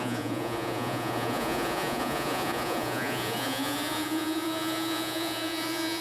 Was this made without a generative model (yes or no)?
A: no